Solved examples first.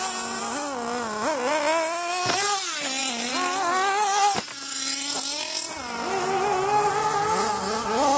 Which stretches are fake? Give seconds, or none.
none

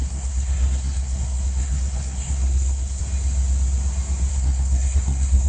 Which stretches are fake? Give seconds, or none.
0.0-3.0; 4.3-5.5

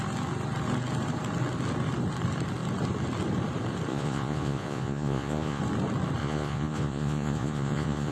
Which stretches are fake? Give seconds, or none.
3.9-5.6; 6.2-8.1

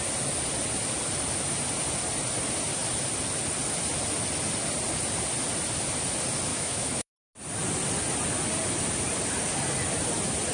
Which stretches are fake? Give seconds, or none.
6.5-7.1